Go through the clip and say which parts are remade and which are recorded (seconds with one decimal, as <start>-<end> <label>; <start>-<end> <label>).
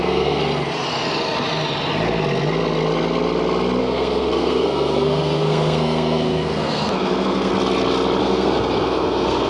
0.0-0.4 remade; 0.4-3.8 recorded; 3.8-7.5 remade; 7.5-8.2 recorded; 8.2-9.5 remade